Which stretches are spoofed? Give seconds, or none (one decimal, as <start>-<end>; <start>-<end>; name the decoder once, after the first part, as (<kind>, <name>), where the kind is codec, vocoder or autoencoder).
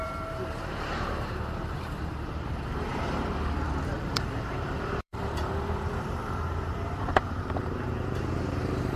0.0-9.0 (vocoder, BigVGAN v2)